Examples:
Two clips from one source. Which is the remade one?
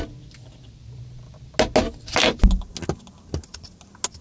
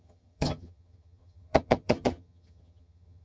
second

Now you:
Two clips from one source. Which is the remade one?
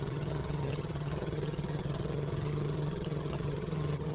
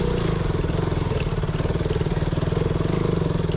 first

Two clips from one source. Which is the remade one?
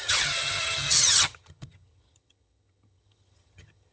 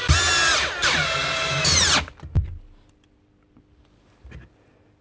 first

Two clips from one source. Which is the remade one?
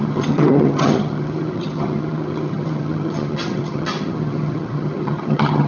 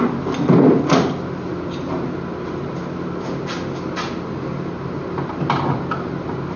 first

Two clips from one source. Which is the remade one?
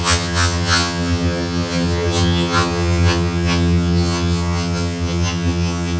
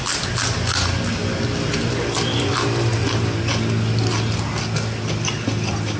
first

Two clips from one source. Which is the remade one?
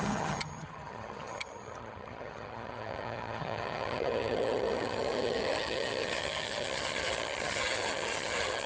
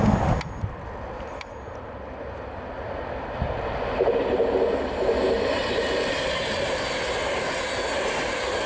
first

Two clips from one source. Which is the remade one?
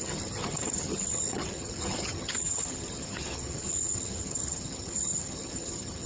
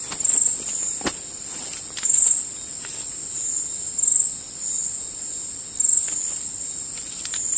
first